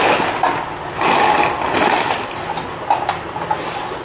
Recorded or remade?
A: recorded